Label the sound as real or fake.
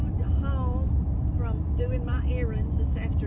real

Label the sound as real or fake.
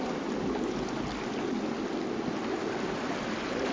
real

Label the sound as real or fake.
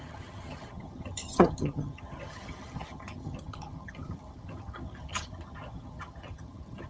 fake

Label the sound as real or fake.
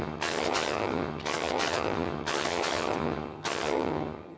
fake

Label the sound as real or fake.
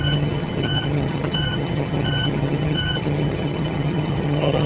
fake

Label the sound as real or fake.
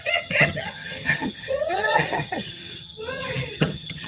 fake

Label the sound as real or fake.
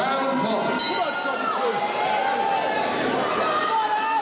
real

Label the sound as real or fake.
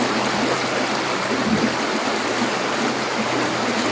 real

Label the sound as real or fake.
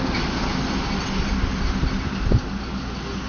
real